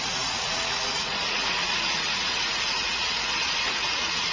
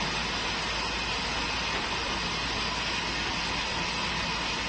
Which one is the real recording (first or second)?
second